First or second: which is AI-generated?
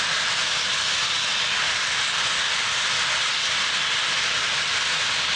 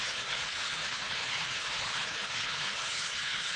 second